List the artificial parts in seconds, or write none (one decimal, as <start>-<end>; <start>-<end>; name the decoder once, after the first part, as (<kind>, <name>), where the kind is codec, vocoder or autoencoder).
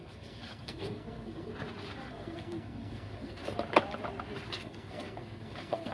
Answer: 0.0-1.5 (codec, SNAC); 2.1-3.4; 4.5-5.9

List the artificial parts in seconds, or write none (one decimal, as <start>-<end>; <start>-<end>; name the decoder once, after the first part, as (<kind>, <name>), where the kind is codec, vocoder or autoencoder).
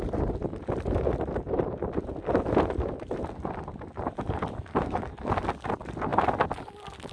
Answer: none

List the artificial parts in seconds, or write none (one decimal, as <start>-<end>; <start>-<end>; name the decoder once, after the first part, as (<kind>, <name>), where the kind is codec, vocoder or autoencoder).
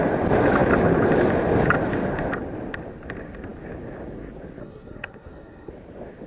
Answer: 4.6-5.7 (codec, SNAC)